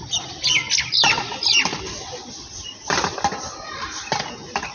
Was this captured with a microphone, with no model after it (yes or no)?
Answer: no